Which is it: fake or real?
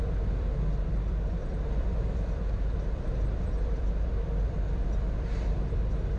fake